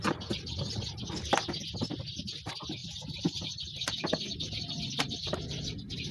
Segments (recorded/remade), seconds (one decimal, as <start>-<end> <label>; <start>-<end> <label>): 0.0-6.1 recorded